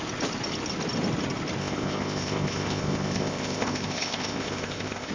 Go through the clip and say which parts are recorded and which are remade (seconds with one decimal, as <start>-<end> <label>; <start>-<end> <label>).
0.0-1.6 recorded; 1.6-5.1 remade